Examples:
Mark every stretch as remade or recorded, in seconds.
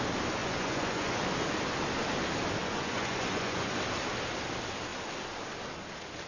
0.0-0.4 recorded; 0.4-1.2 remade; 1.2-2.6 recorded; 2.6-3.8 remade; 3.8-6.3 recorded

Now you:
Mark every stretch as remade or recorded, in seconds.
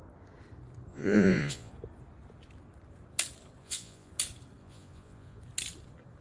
0.0-0.9 recorded; 0.9-1.7 remade; 1.7-3.6 recorded; 3.6-4.1 remade; 4.1-4.6 recorded; 4.6-5.4 remade; 5.4-6.2 recorded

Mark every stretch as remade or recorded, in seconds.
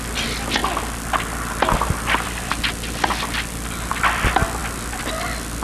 0.0-5.6 recorded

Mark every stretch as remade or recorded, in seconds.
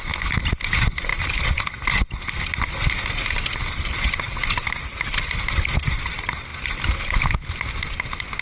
0.0-8.4 recorded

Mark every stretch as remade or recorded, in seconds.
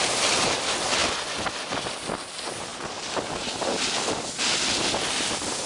0.0-5.7 recorded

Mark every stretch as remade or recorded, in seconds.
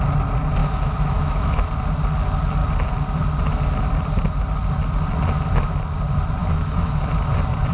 0.0-0.6 recorded; 0.6-1.7 remade; 1.7-6.4 recorded; 6.4-7.0 remade; 7.0-7.7 recorded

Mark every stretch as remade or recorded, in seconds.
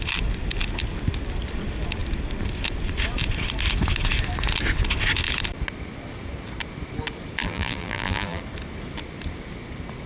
0.0-7.4 recorded; 7.4-8.4 remade; 8.4-10.1 recorded